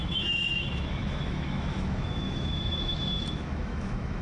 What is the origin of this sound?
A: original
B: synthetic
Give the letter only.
B